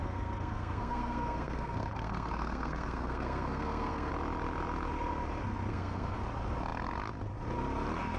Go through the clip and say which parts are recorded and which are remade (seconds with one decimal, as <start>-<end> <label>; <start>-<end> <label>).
0.0-4.1 remade; 4.1-5.7 recorded; 5.7-6.2 remade; 6.2-8.2 recorded